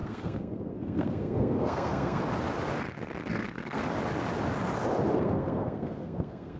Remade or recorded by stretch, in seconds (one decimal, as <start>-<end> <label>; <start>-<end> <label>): 0.0-2.2 remade; 2.2-3.3 recorded; 3.3-3.8 remade; 3.8-5.2 recorded; 5.2-6.6 remade